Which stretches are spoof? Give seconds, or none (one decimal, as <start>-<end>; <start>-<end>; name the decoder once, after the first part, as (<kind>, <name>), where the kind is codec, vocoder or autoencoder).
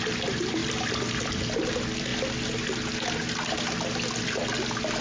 0.6-1.7 (vocoder, BigVGAN v2)